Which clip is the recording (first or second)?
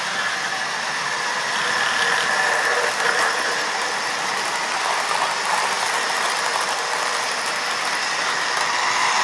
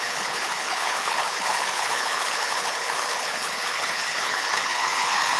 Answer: first